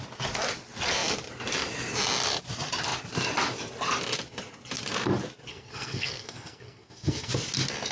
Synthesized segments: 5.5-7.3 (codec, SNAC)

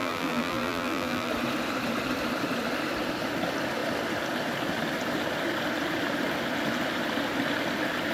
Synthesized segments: 0.0-1.3 (vocoder, BigVGAN v2)